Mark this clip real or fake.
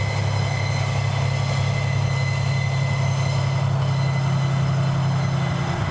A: real